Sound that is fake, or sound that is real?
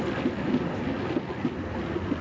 real